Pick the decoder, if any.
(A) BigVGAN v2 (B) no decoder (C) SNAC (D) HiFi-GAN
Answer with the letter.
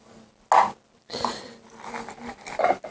B